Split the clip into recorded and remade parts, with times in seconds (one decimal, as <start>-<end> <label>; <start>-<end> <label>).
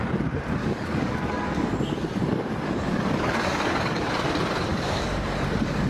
0.0-0.6 recorded; 0.6-4.1 remade; 4.1-4.7 recorded; 4.7-5.9 remade